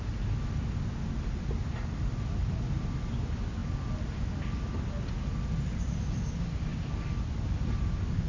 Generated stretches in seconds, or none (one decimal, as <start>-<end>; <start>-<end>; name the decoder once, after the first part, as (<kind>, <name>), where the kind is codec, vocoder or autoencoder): none